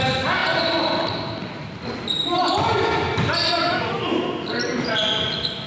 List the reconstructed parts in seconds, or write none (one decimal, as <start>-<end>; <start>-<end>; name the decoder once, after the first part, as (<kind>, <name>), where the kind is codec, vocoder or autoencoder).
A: none